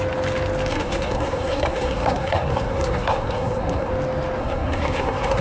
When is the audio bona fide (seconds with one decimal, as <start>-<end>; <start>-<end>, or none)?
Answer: 0.0-0.7; 3.9-4.4